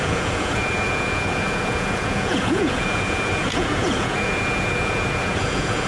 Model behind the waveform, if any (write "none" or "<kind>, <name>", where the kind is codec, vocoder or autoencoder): vocoder, Vocos